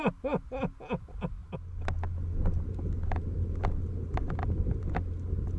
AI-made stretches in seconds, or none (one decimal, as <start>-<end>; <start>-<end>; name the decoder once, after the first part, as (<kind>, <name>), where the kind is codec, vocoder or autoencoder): none